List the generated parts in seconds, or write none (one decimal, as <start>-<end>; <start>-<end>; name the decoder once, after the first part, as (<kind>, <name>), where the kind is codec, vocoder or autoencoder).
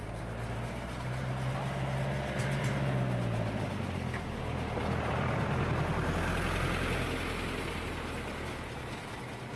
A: none